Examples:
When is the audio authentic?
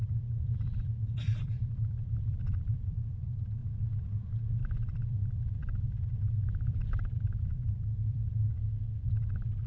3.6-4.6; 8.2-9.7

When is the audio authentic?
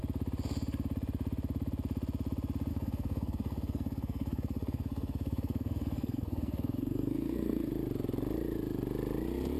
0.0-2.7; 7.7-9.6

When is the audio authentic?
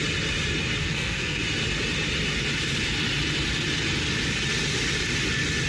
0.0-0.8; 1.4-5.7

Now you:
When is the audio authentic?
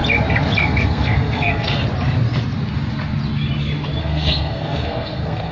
0.0-0.6; 1.8-4.0